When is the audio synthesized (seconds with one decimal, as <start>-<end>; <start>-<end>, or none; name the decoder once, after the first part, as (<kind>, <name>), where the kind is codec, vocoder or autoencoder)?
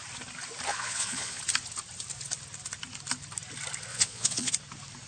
0.7-1.4 (vocoder, Vocos); 3.9-4.5